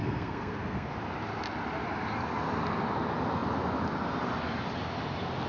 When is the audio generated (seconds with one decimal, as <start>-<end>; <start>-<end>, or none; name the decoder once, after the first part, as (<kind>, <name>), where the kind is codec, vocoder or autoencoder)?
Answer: 0.0-0.9 (codec, SNAC)